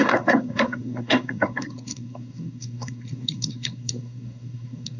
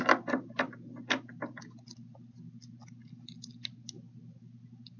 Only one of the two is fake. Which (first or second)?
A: first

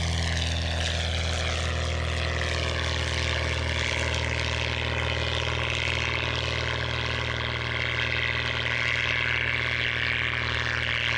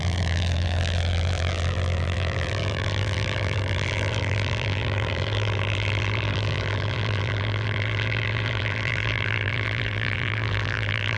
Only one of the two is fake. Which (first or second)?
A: second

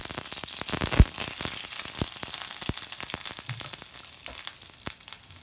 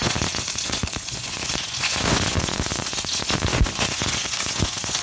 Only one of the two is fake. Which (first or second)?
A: second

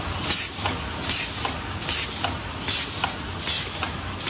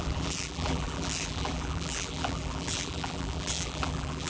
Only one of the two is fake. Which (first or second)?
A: second